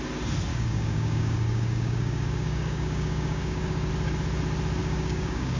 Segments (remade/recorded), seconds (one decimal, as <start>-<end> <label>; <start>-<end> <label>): 0.0-0.5 recorded; 0.5-3.9 remade; 3.9-4.8 recorded; 4.8-5.6 remade